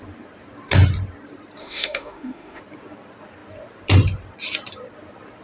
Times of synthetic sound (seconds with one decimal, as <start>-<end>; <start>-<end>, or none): 1.6-2.6